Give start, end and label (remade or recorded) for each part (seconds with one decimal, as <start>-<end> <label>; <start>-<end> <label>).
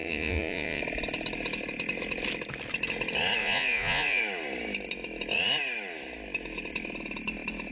0.0-0.8 remade; 0.8-3.4 recorded; 3.4-4.2 remade; 4.2-7.7 recorded